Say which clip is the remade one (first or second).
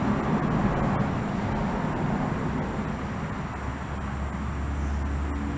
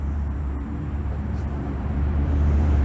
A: second